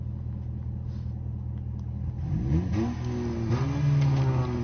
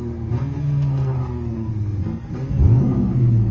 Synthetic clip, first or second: second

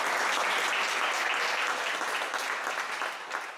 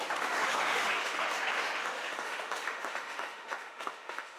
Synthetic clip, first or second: second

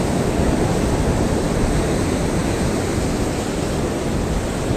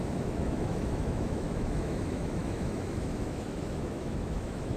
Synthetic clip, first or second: second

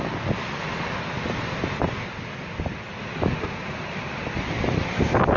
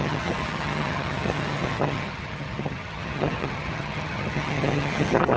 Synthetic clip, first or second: second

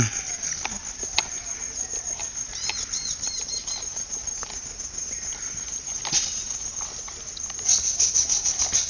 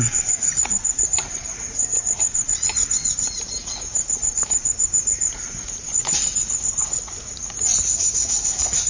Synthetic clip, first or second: second